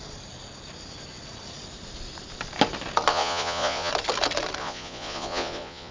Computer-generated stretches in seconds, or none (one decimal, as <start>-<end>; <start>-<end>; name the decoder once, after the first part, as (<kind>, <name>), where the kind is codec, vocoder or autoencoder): 3.1-3.9 (vocoder, Vocos); 4.6-5.9